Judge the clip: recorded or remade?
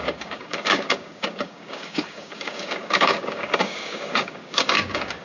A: remade